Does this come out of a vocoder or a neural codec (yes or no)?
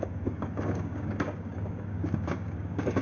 yes